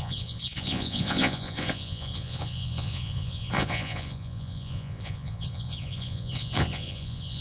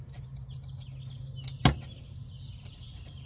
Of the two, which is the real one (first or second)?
second